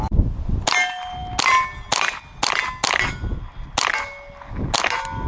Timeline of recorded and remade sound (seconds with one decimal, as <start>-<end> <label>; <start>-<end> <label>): 0.0-5.3 recorded